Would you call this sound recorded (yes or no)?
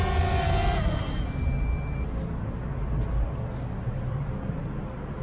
yes